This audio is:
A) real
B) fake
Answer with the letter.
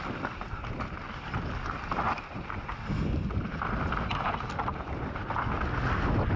A